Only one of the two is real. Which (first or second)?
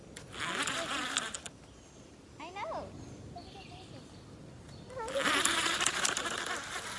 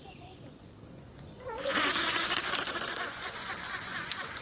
first